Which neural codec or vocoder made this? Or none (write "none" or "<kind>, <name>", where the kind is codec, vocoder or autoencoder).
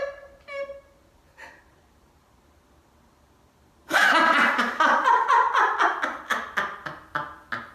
none